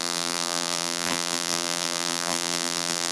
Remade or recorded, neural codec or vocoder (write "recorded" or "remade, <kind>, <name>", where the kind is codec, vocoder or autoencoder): remade, vocoder, BigVGAN v2